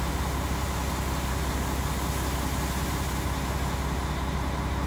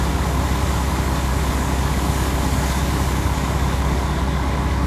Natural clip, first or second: first